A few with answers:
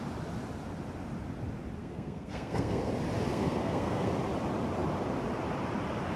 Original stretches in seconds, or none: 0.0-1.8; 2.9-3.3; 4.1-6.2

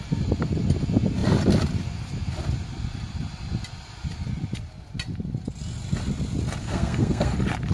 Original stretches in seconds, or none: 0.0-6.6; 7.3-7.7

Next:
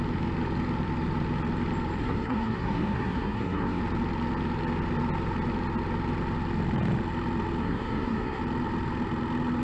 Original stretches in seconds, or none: 0.0-2.0; 3.8-7.6; 8.4-9.6

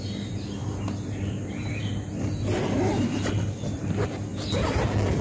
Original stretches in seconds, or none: 0.0-0.6; 1.8-5.2

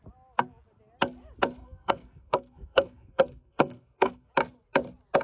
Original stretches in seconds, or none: 0.0-1.6; 4.3-5.2